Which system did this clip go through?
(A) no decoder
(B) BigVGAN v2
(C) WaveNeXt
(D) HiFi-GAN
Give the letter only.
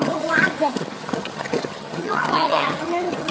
D